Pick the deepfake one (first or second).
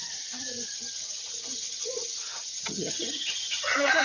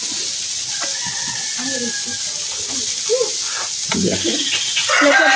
first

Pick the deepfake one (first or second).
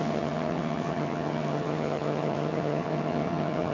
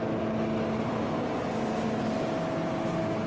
first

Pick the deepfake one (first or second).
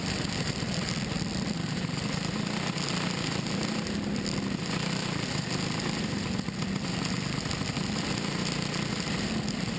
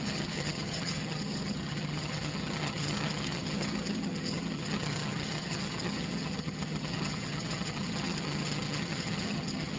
second